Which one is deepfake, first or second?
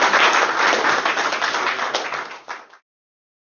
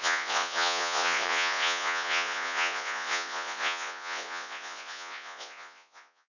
second